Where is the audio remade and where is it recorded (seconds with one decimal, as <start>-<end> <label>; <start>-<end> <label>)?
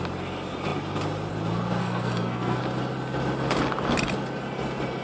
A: 0.0-1.8 recorded; 1.8-2.6 remade; 2.6-5.0 recorded